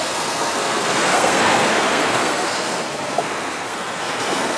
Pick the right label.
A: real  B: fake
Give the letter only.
B